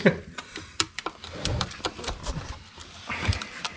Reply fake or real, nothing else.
fake